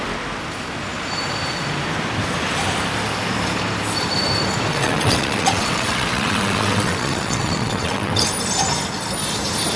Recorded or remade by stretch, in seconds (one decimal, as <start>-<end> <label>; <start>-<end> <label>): 0.0-4.7 recorded; 4.7-8.3 remade; 8.3-9.8 recorded